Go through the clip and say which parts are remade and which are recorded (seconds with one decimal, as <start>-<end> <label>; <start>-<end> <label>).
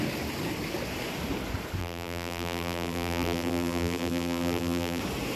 0.0-1.8 recorded; 1.8-5.0 remade; 5.0-5.4 recorded